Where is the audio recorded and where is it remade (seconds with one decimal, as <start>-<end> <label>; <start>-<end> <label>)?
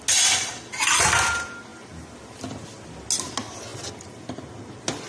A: 0.0-5.1 recorded